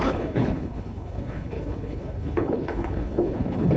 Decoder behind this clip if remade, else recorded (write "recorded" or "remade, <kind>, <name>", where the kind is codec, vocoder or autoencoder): remade, codec, HILCodec